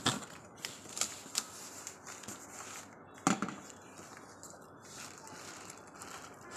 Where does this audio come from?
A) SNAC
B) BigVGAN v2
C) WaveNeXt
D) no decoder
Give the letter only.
D